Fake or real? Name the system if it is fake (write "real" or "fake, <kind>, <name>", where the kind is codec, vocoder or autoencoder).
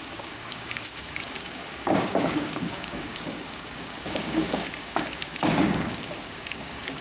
fake, codec, DAC